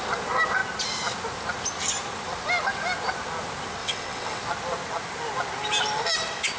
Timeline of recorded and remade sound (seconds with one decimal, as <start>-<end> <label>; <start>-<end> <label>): 0.0-3.8 recorded; 3.8-4.4 remade; 4.4-6.6 recorded